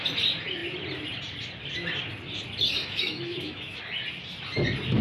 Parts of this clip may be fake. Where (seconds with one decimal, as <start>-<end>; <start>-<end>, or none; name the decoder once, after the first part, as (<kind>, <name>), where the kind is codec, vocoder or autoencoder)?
2.8-3.8 (autoencoder, DAC-VAE)